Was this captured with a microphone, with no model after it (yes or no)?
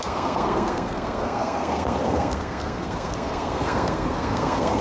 no